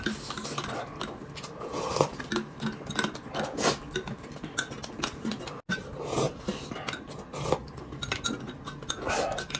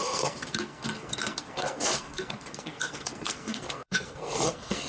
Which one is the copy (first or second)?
second